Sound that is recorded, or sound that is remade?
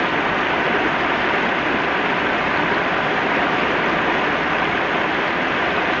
recorded